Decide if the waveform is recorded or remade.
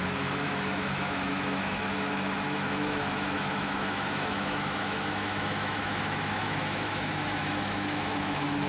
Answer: remade